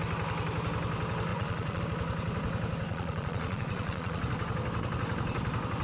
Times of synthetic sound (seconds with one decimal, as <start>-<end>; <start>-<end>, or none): 1.3-1.8; 2.9-4.2